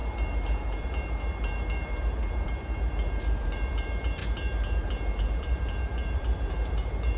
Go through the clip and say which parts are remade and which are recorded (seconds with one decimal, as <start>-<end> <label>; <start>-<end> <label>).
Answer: 0.0-7.2 remade